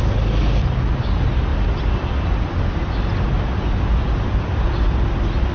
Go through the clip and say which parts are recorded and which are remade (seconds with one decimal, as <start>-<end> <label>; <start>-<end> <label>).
0.0-5.5 recorded